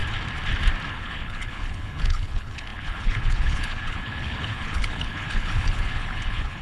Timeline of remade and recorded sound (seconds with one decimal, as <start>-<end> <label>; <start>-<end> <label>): 0.0-0.9 recorded; 0.9-6.6 remade